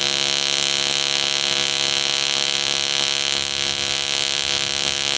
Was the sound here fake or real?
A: real